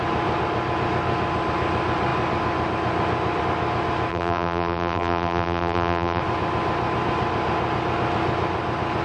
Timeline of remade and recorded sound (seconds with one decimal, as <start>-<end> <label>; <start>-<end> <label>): 0.0-4.1 recorded; 4.1-6.2 remade; 6.2-9.0 recorded